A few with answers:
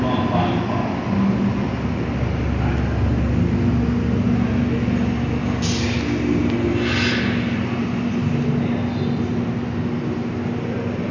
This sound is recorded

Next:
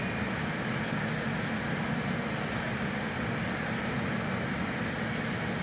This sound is recorded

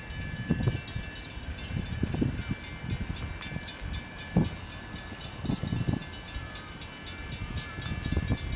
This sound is recorded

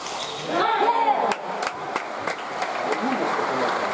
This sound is recorded